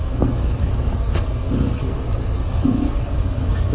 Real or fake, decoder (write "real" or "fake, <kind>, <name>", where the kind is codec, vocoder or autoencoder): fake, codec, SNAC